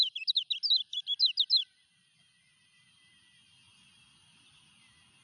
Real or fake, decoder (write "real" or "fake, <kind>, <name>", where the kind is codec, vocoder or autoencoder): real